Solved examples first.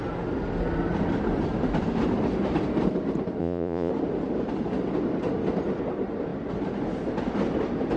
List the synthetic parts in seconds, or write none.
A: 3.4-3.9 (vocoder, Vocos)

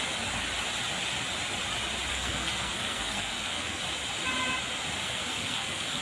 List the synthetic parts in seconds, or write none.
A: 2.1-3.8 (codec, SNAC); 5.0-6.0